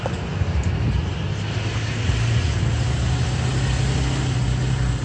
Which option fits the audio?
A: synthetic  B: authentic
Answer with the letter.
B